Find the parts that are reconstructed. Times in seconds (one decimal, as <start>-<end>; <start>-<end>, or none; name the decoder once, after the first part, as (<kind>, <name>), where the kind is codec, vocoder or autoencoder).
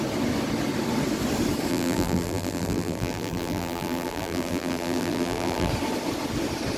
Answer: 1.7-5.7 (vocoder, BigVGAN v2)